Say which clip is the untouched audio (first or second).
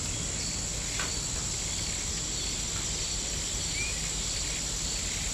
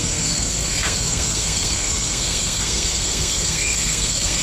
first